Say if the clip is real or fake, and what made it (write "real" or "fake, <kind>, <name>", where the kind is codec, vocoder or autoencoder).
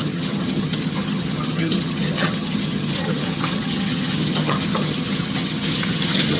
fake, vocoder, HiFi-GAN